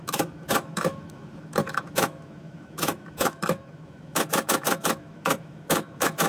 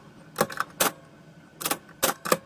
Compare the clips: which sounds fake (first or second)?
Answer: first